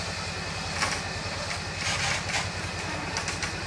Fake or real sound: real